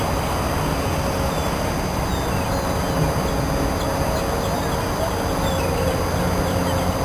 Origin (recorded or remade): recorded